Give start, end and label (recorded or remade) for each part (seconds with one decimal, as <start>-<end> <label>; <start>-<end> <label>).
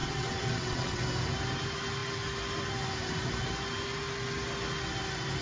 0.0-1.0 remade; 1.0-5.4 recorded